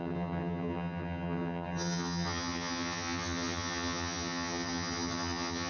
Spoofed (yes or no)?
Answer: yes